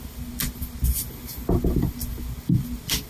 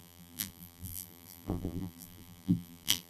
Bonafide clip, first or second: first